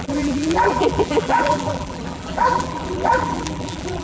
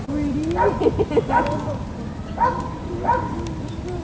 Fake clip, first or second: first